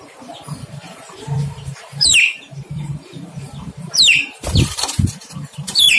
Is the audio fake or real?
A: fake